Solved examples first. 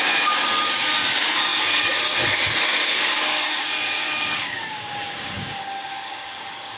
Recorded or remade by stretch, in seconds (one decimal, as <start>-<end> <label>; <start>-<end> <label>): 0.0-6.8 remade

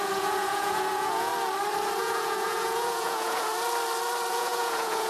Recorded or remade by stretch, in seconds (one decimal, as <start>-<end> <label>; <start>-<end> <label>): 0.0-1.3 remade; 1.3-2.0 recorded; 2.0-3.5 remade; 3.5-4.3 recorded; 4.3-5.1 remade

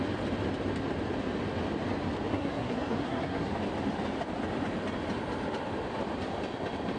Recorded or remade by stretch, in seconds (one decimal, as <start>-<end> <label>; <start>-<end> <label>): 0.0-2.3 recorded; 2.3-3.5 remade; 3.5-7.0 recorded

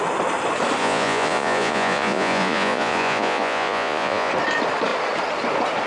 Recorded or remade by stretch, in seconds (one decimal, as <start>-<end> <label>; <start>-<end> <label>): 0.0-0.8 recorded; 0.8-4.3 remade; 4.3-5.9 recorded

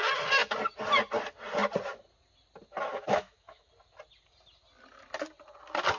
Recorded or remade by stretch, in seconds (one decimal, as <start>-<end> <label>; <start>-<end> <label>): 0.0-2.9 recorded; 2.9-3.7 remade; 3.7-6.0 recorded

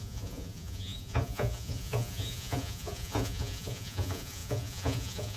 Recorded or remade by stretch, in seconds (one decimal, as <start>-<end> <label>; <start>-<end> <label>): 0.0-5.4 remade